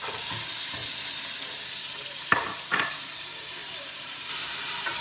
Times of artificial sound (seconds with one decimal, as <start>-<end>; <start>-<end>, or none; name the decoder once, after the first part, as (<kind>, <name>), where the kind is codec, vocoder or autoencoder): 0.0-0.8 (vocoder, BigVGAN v2); 2.0-5.0